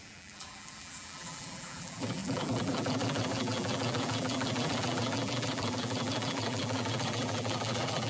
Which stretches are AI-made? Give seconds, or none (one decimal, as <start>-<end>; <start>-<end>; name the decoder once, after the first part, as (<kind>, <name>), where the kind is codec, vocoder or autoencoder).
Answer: 0.0-8.1 (vocoder, BigVGAN v2)